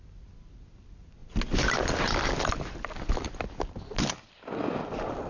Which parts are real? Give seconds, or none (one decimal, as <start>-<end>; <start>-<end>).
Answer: 0.0-5.3